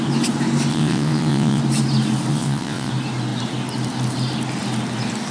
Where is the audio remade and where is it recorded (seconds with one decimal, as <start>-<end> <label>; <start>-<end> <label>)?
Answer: 0.0-0.7 recorded; 0.7-1.6 remade; 1.6-2.3 recorded; 2.3-2.9 remade; 2.9-5.3 recorded